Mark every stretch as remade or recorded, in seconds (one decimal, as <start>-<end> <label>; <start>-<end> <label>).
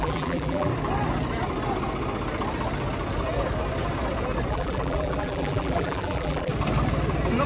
0.0-0.7 remade; 0.7-4.5 recorded; 4.5-6.5 remade; 6.5-7.5 recorded